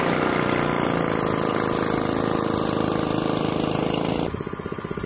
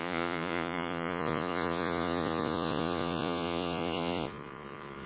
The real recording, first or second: first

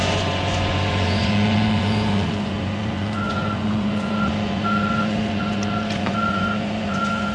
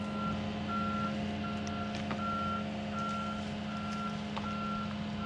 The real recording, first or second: second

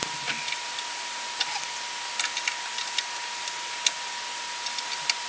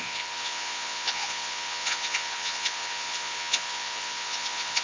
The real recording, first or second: first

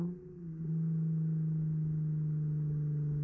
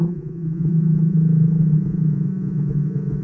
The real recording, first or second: first